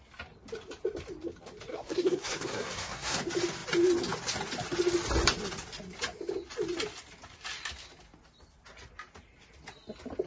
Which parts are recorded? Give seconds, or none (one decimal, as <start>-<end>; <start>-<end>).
0.0-1.7; 3.2-10.3